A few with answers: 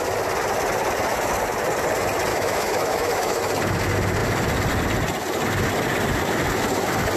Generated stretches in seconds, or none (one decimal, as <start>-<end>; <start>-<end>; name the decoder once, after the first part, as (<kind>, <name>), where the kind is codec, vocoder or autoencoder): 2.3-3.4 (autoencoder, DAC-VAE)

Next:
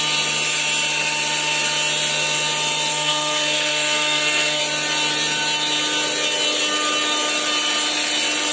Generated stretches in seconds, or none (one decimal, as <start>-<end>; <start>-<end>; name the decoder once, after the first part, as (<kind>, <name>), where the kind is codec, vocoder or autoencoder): 2.9-4.6 (codec, SNAC)

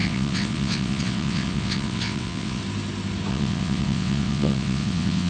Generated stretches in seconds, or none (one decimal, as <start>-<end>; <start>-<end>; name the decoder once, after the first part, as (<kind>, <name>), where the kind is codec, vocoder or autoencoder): 0.0-2.6 (vocoder, WaveNeXt); 3.3-5.3

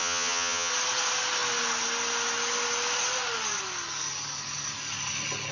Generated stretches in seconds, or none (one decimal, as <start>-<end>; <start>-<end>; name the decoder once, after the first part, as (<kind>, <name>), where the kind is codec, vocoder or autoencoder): 0.0-0.7 (vocoder, HiFi-GAN)